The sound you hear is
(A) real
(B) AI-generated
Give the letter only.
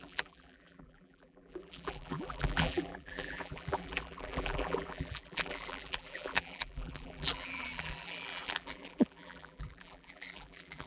B